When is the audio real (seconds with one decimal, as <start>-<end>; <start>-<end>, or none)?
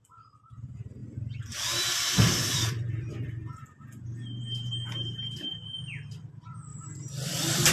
0.0-1.0; 4.4-6.7